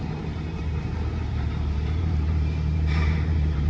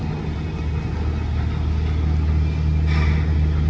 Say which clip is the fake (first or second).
first